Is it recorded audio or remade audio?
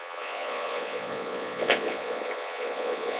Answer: remade